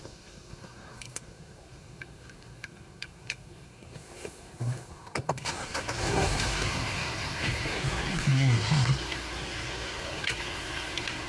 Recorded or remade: remade